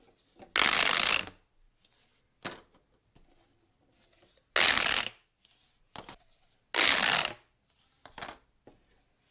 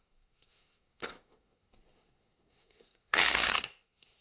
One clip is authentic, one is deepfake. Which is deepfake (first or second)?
second